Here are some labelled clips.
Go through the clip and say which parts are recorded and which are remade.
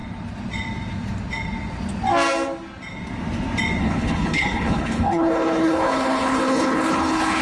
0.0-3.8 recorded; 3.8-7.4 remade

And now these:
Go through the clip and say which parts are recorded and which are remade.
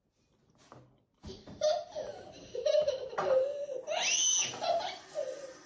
0.0-5.7 recorded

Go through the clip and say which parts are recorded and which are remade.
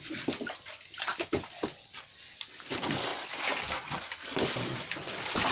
0.0-5.5 recorded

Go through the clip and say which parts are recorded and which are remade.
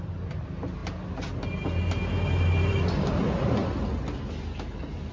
0.0-5.1 recorded